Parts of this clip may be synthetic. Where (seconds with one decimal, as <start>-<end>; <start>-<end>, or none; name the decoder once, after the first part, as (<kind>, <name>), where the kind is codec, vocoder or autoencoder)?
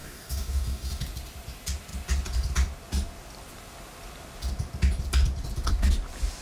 0.0-1.0 (codec, DAC)